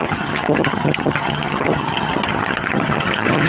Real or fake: fake